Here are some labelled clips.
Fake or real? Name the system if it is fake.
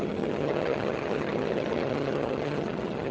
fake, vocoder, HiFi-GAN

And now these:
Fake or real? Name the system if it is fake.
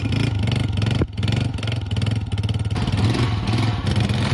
real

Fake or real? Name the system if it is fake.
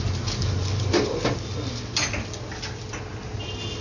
real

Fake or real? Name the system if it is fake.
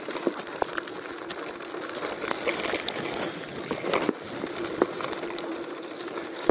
real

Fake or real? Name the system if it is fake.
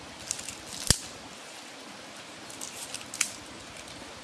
real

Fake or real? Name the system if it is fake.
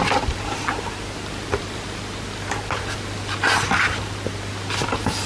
real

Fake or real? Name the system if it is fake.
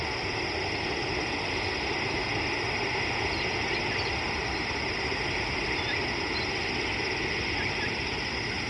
real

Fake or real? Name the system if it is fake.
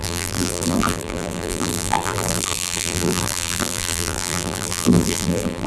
fake, vocoder, BigVGAN v2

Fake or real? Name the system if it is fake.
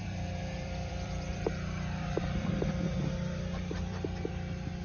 fake, vocoder, BigVGAN v2